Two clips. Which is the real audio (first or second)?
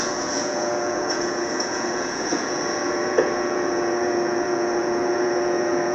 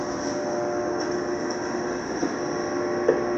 second